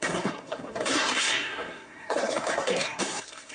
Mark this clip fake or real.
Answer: fake